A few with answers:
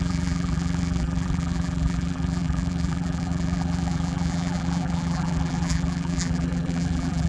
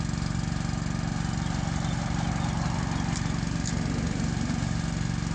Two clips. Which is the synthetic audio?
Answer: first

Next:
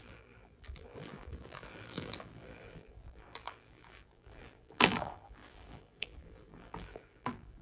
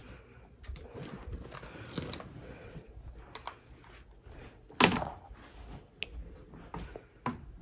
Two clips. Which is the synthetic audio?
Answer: first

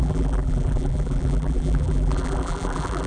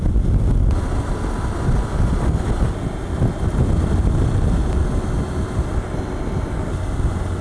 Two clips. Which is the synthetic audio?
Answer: first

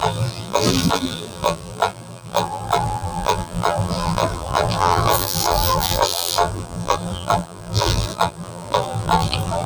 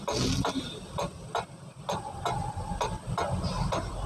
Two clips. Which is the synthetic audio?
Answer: first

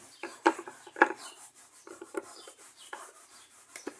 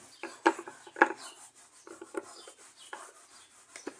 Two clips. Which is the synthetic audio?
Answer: first